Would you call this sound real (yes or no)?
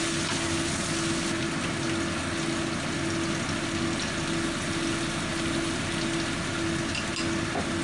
yes